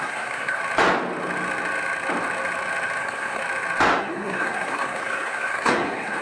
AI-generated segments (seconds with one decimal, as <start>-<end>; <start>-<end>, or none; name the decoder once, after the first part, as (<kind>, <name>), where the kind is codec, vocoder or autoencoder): 0.0-0.6 (codec, SNAC); 3.0-3.4; 4.0-6.2